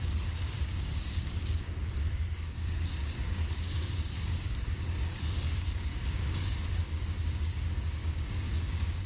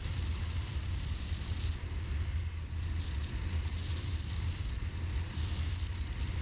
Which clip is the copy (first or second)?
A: first